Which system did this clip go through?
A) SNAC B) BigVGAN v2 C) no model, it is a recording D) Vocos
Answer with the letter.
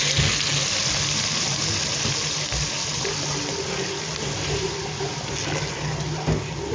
C